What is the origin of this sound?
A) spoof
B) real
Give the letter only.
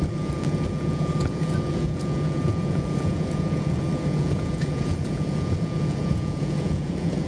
A